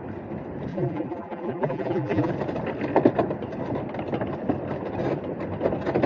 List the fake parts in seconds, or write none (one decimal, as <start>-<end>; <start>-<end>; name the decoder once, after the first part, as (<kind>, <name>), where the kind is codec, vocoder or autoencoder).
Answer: 0.7-2.3 (vocoder, BigVGAN v2)